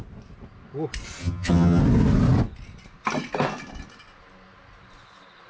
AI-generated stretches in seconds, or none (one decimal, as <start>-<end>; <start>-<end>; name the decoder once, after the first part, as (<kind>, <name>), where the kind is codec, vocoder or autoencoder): 1.2-1.8 (vocoder, HiFi-GAN)